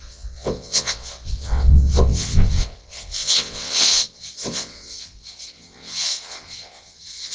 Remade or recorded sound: remade